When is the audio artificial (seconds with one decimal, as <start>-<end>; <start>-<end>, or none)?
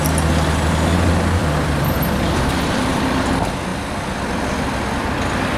1.4-3.2